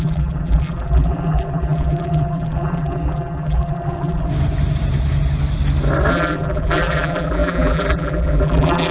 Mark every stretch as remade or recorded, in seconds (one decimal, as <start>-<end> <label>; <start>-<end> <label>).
0.0-4.3 remade; 4.3-6.1 recorded; 6.1-8.9 remade